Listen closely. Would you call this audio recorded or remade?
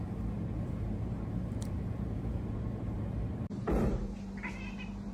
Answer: remade